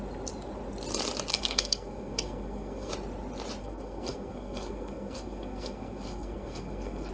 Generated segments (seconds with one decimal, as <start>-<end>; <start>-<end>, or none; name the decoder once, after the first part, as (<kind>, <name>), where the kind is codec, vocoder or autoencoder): 1.3-2.9 (codec, SNAC); 3.6-7.1